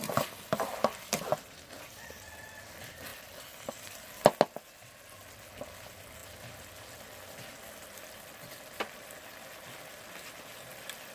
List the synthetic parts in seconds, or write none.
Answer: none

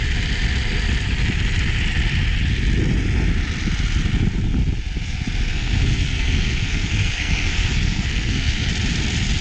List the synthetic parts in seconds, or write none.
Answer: 5.5-8.7 (codec, SNAC)

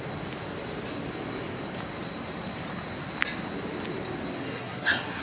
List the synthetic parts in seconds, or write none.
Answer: 4.4-5.2 (codec, SNAC)

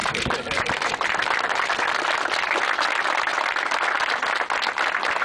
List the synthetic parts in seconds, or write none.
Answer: 0.0-1.9 (vocoder, BigVGAN v2)

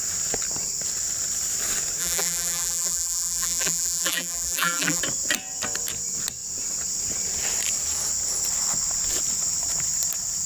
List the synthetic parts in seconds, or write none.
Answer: 2.0-5.0 (vocoder, BigVGAN v2)

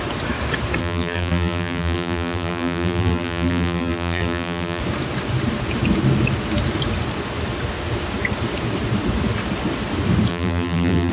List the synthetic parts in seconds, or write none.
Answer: 0.8-4.8 (vocoder, BigVGAN v2); 10.3-11.1

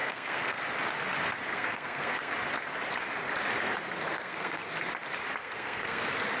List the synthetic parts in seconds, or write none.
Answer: 0.0-0.6 (codec, SNAC); 1.5-2.3; 4.1-4.7; 5.4-6.0